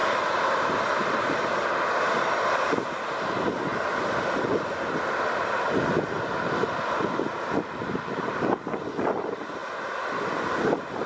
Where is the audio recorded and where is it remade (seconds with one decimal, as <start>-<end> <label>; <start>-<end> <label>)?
0.0-11.1 recorded